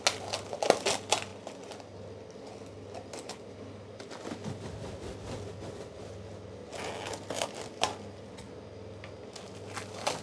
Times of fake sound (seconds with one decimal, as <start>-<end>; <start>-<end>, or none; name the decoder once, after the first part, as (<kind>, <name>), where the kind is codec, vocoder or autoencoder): none